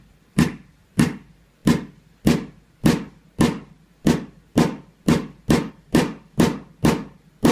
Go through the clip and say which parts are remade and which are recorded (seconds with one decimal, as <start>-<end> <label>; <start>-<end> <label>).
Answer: 0.0-1.6 remade; 1.6-5.7 recorded; 5.7-7.5 remade